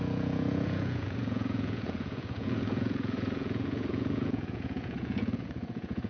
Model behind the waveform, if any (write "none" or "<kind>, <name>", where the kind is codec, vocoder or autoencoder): vocoder, Vocos